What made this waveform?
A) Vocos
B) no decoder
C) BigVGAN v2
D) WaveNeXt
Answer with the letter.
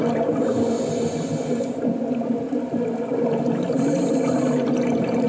B